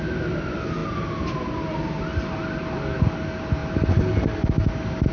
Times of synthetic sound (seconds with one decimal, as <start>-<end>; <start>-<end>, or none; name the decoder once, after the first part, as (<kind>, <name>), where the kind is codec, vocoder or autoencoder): none

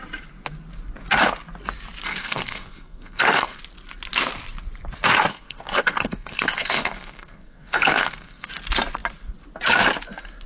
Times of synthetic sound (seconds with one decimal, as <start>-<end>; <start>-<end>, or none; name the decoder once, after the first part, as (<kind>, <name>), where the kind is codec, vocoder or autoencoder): 2.1-3.6 (codec, SNAC); 5.3-8.5